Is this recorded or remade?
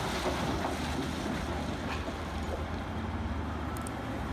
recorded